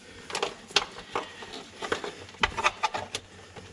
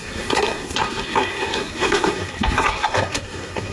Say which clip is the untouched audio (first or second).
first